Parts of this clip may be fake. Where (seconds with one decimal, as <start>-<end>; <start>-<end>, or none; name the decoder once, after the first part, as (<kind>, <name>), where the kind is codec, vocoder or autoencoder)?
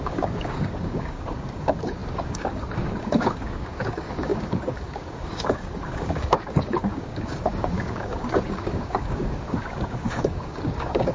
0.0-11.1 (codec, DAC)